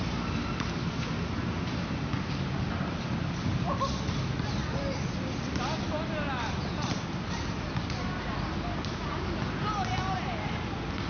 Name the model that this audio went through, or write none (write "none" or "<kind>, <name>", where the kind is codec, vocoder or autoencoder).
none